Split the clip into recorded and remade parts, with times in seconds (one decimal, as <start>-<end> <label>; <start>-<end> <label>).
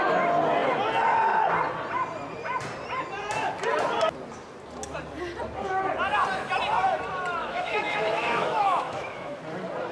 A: 0.0-7.4 recorded; 7.4-9.4 remade; 9.4-9.9 recorded